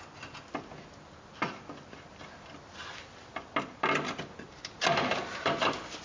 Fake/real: real